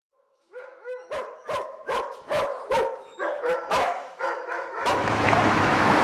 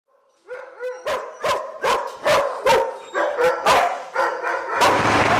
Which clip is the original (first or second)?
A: second